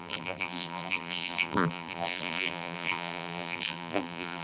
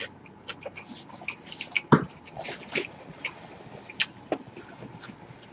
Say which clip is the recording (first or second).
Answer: second